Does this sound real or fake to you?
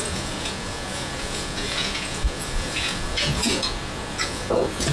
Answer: fake